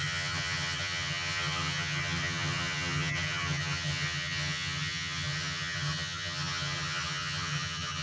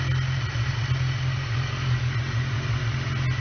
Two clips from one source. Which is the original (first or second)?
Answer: second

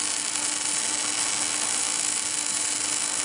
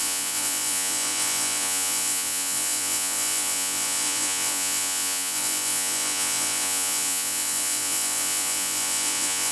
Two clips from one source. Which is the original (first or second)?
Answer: first